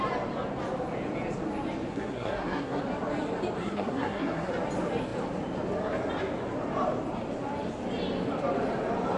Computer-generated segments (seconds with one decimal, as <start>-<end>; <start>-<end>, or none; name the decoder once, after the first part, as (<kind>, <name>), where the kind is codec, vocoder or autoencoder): 1.9-2.8 (codec, SNAC); 3.6-4.5